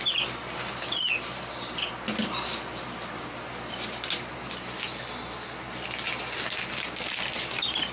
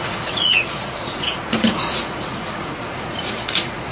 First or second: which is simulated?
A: second